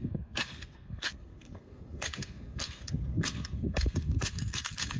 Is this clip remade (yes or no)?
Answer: yes